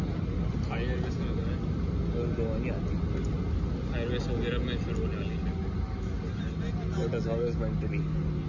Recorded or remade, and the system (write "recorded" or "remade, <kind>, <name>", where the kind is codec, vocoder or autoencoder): recorded